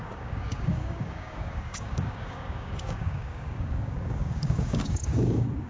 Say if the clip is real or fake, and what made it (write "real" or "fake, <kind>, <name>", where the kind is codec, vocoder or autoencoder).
fake, codec, DAC